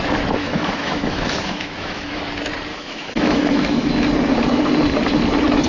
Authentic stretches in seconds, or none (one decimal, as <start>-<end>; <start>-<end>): 0.0-0.4; 2.2-2.7; 3.9-5.7